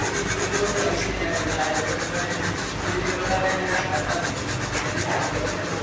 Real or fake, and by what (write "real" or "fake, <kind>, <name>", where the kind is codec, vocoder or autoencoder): real